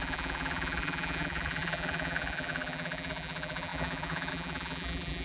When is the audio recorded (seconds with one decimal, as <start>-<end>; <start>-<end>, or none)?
none